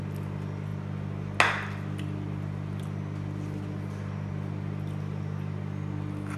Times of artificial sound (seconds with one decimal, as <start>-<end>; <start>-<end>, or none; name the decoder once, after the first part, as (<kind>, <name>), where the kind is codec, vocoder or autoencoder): none